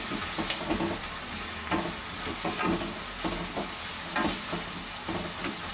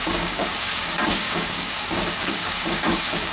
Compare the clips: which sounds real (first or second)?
first